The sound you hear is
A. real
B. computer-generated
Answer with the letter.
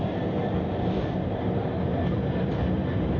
A